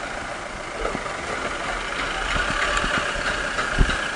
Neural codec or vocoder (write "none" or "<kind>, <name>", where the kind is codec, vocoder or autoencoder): none